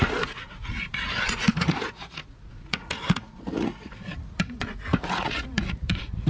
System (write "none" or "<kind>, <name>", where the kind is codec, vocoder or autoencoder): vocoder, Vocos